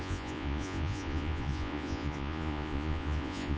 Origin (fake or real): fake